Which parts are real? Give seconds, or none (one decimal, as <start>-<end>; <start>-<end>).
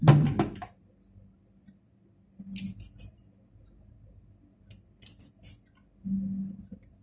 0.0-7.0